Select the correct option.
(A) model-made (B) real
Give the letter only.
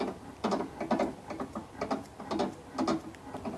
B